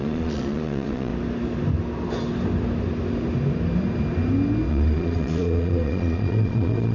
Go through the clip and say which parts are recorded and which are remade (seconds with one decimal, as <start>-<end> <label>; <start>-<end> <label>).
0.0-1.1 remade; 1.1-4.7 recorded; 4.7-6.9 remade